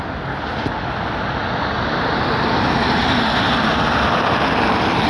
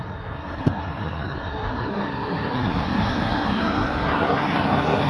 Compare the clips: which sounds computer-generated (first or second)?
second